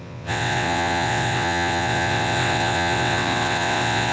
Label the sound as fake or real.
fake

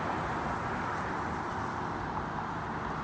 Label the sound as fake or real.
real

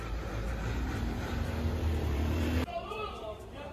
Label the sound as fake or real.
fake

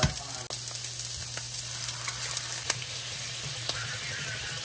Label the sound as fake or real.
real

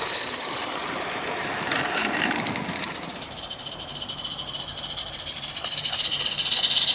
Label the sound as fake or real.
fake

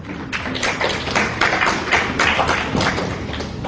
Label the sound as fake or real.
real